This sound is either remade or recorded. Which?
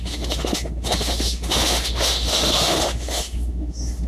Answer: remade